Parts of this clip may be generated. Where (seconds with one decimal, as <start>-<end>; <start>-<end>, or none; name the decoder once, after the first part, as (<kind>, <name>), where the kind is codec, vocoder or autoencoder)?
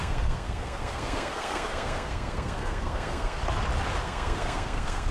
0.0-3.4 (codec, SNAC); 4.0-5.1